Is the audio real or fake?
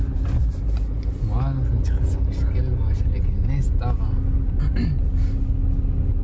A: real